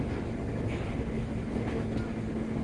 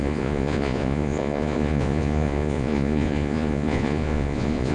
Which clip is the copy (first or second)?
second